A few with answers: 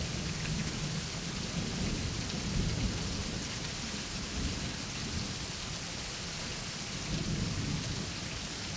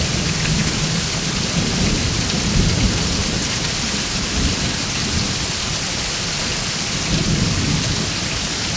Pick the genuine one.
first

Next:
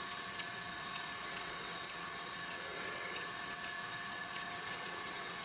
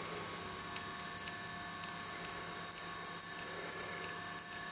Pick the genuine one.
second